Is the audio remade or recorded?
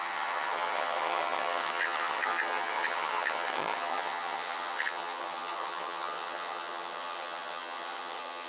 remade